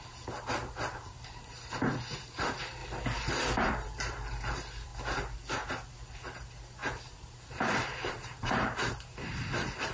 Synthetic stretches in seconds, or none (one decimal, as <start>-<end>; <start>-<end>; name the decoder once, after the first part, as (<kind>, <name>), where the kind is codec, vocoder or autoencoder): 0.0-2.8 (vocoder, BigVGAN v2); 3.3-4.9; 6.1-9.9